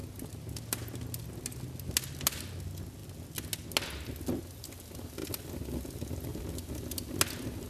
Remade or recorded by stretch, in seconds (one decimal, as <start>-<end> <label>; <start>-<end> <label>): 0.0-7.7 recorded